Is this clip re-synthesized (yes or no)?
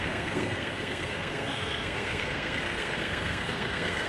yes